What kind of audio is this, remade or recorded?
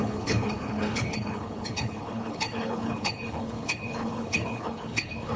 remade